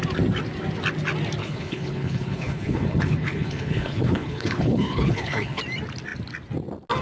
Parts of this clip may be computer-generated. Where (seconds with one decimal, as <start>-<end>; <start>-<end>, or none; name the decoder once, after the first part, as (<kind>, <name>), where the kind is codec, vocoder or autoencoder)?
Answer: 1.4-5.6 (codec, HILCodec)

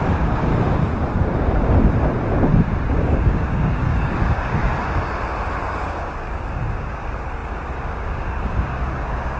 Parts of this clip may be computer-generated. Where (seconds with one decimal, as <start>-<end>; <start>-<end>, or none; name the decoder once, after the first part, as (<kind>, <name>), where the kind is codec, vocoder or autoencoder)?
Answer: 0.0-0.5 (codec, DAC); 2.9-4.6; 5.7-9.4

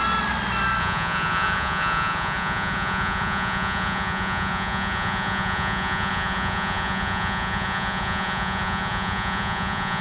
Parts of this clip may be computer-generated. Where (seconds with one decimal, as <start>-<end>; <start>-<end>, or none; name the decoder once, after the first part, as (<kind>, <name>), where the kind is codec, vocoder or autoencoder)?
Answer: 0.8-10.0 (vocoder, Vocos)

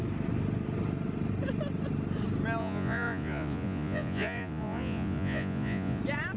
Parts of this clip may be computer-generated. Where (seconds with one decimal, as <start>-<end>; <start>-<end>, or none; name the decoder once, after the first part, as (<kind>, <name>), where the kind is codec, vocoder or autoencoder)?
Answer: 2.6-6.0 (vocoder, Vocos)

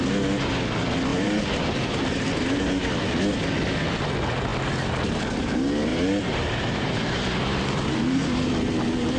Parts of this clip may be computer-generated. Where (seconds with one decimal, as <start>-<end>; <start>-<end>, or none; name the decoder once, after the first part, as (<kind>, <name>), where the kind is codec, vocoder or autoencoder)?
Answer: 1.1-2.1 (vocoder, BigVGAN v2); 5.9-8.5

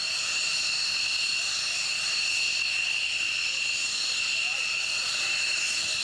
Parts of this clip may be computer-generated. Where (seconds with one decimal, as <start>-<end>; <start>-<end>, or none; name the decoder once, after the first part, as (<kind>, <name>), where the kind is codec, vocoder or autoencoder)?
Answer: none

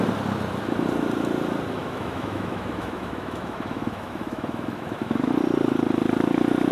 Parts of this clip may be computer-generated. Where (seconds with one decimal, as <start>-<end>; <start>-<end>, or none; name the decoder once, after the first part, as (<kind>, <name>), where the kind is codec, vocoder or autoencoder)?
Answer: 1.8-5.3 (autoencoder, DAC-VAE)

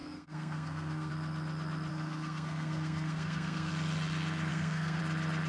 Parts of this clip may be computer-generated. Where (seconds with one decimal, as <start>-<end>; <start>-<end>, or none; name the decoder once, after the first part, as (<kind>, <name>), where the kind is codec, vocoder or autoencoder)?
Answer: 0.0-1.1 (codec, SNAC); 1.9-3.7; 4.5-5.0